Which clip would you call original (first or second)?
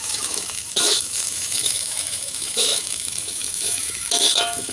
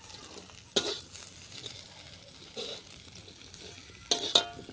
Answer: second